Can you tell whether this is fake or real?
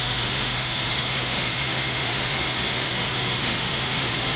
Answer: fake